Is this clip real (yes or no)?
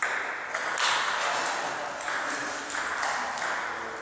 yes